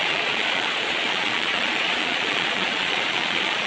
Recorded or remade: remade